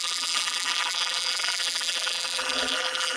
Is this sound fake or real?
fake